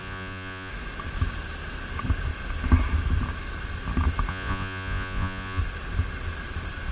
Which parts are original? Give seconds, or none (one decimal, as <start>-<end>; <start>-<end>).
0.7-4.3; 5.6-6.9